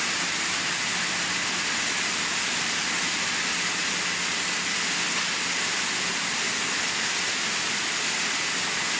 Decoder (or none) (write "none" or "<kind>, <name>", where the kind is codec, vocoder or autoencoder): none